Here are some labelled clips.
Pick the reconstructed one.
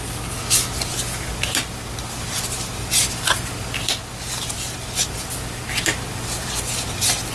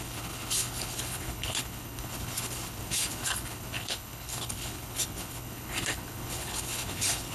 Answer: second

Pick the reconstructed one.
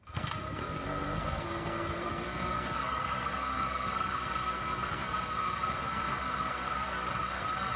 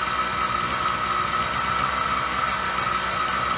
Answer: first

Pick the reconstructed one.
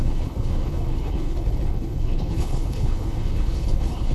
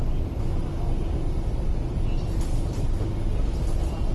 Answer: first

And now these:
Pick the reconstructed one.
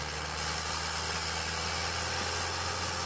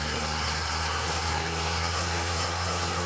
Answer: second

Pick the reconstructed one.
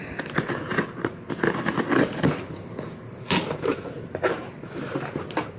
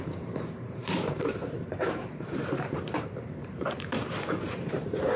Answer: second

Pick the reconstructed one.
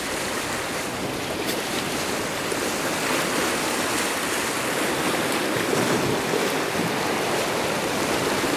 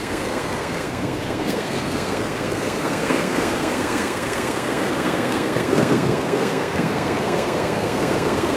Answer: second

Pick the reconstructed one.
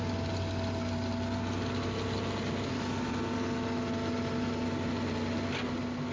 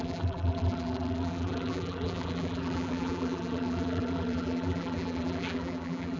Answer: second